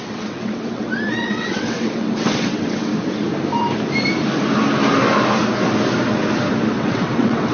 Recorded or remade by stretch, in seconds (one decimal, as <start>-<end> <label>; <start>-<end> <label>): 0.0-2.9 remade; 2.9-6.7 recorded; 6.7-7.5 remade